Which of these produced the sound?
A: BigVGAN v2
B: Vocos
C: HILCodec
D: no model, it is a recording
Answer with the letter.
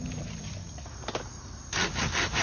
D